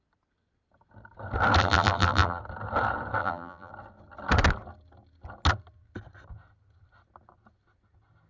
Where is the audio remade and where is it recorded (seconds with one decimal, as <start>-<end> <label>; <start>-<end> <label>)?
0.0-1.6 recorded; 1.6-2.4 remade; 2.4-3.2 recorded; 3.2-3.7 remade; 3.7-8.3 recorded